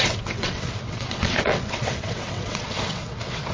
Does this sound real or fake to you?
fake